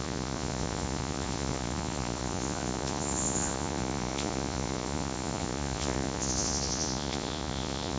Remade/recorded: remade